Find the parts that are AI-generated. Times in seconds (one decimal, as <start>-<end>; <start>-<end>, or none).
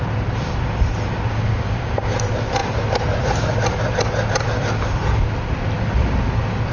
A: 1.3-2.1